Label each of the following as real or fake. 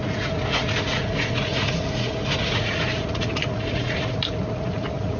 fake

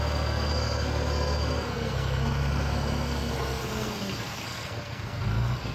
fake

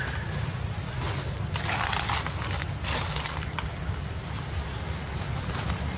real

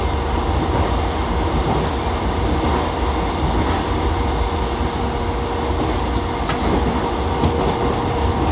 real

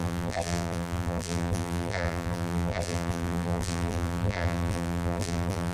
fake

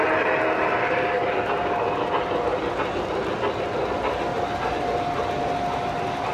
real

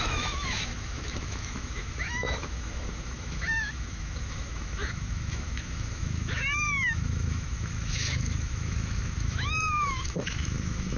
fake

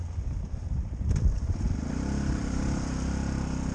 real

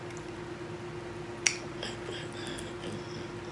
real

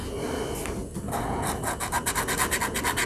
real